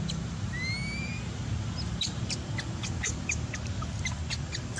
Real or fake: real